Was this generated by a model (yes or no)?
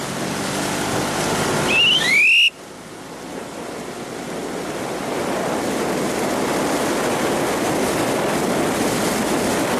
no